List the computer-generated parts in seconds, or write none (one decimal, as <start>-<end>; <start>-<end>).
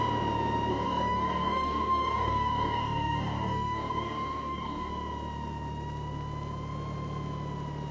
0.7-4.9